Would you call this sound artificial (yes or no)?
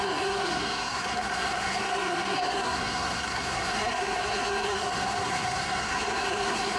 yes